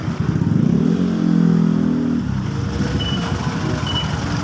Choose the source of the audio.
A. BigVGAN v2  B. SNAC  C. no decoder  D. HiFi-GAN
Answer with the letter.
C